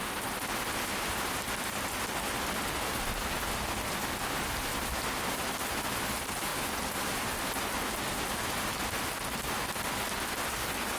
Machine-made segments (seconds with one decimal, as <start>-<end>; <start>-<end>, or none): none